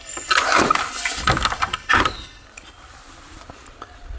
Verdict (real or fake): real